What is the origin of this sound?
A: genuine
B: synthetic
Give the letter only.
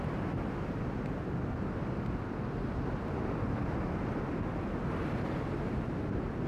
A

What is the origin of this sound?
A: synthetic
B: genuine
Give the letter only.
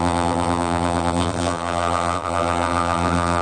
A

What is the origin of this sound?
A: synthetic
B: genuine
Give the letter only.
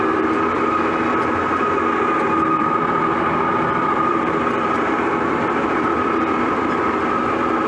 A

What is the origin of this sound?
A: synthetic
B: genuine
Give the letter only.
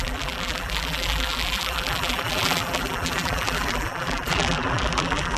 A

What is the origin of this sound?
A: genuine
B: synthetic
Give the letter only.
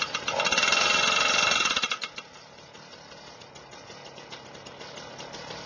A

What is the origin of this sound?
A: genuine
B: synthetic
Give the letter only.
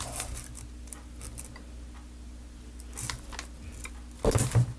A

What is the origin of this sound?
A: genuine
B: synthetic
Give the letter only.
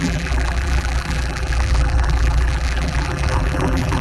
B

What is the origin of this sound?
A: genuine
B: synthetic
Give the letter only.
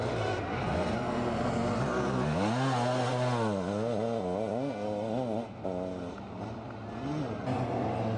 A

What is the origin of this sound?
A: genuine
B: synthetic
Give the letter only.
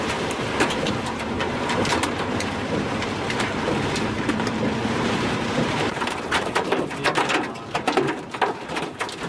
B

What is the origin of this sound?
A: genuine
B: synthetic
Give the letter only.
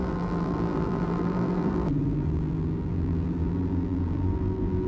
B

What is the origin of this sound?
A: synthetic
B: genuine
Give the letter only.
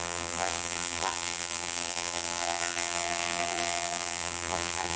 A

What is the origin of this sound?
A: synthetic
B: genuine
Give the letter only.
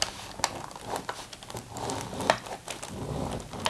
B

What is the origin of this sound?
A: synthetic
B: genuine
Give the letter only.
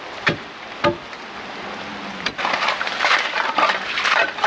A